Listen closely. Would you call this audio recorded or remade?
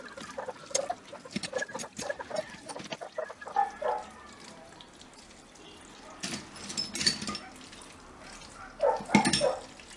recorded